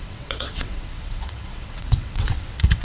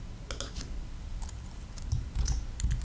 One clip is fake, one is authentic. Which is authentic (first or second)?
second